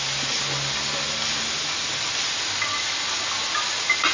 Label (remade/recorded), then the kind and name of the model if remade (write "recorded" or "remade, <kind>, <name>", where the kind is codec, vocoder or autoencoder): recorded